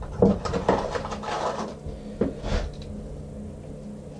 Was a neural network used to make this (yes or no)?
no